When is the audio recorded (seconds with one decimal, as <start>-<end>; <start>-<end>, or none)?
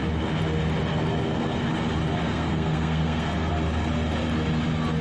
0.0-2.2; 3.5-5.0